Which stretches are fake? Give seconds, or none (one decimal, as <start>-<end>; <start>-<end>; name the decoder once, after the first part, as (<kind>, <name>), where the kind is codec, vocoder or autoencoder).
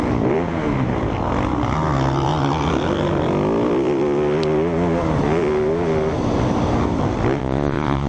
7.4-8.1 (vocoder, Vocos)